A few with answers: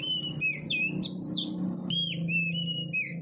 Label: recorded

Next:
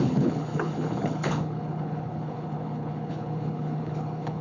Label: remade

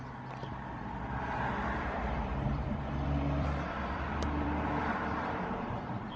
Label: remade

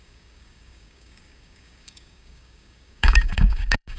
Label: remade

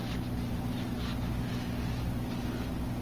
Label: recorded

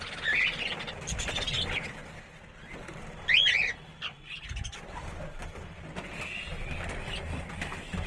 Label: recorded